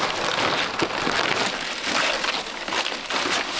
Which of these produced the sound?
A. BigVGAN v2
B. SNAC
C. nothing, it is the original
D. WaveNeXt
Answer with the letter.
C